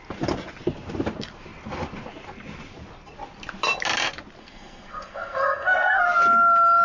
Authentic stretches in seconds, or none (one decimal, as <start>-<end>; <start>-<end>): 0.0-4.4; 6.0-6.8